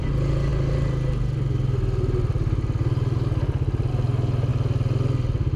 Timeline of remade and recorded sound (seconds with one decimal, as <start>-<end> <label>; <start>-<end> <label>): 0.0-5.6 recorded